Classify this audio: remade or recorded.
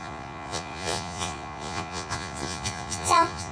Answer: remade